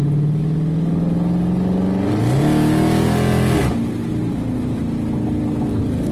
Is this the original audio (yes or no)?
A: yes